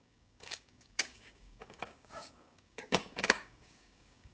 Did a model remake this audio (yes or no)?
yes